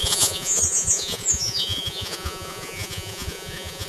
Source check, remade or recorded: remade